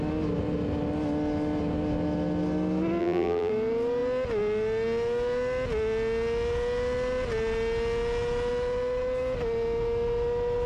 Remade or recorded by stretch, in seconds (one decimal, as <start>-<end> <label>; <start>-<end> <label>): 0.0-3.0 recorded; 3.0-3.5 remade; 3.5-10.7 recorded